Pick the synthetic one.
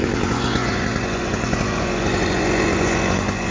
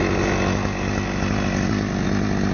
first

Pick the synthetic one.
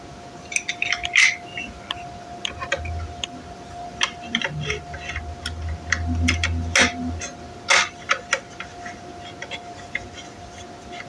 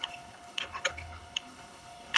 second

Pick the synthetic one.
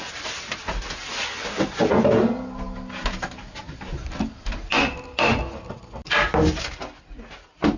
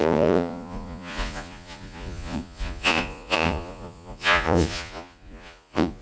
second